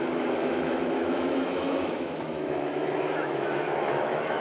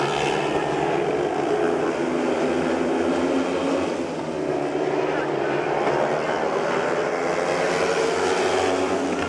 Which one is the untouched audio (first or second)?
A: second